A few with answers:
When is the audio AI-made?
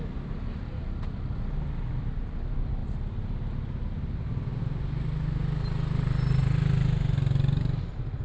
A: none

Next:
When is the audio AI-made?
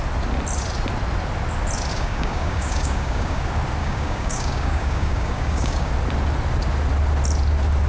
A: 1.9-3.4 (codec, DAC); 3.8-5.9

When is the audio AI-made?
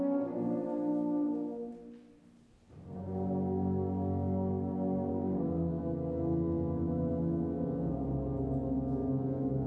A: 5.1-5.8 (codec, SNAC)